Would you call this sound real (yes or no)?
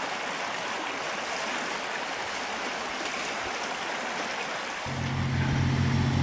yes